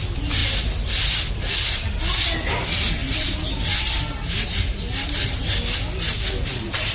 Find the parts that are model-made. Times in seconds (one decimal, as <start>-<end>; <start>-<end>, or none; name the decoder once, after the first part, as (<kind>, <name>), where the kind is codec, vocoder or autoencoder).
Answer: none